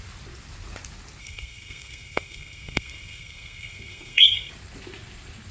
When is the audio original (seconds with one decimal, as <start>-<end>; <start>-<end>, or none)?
0.0-1.2; 4.5-5.5